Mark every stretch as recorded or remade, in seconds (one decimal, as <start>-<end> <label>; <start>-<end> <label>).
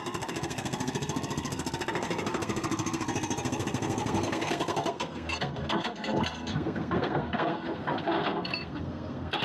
0.0-9.4 remade